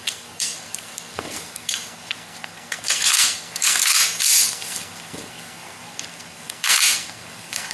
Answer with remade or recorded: remade